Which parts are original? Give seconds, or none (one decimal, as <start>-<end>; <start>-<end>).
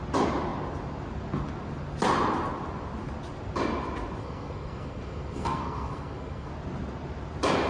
0.0-4.2; 6.5-7.7